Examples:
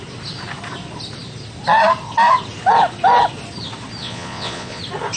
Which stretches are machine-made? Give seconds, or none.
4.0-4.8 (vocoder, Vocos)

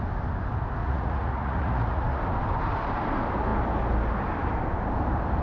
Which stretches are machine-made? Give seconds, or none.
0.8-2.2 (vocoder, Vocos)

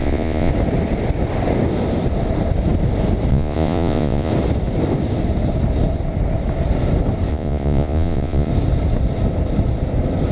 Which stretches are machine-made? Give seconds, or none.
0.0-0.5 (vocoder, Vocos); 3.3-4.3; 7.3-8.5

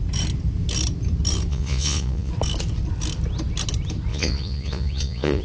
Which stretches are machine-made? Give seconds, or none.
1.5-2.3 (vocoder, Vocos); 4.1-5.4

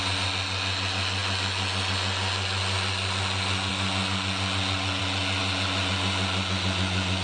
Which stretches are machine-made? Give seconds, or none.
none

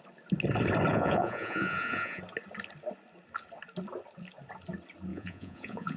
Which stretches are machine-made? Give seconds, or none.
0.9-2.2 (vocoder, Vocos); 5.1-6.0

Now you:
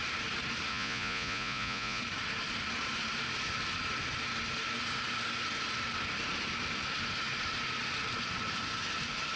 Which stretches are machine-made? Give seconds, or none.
0.7-2.0 (vocoder, Vocos)

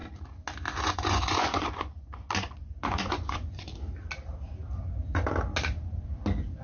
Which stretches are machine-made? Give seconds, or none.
0.8-3.7 (vocoder, Vocos)